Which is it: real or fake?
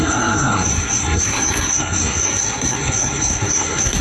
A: fake